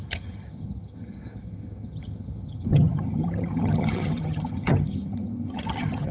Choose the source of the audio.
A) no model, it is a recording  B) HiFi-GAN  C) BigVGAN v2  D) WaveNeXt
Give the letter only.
B